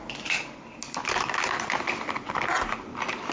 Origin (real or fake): real